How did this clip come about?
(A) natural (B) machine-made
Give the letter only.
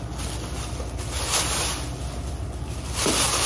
A